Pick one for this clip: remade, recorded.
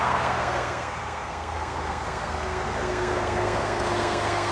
remade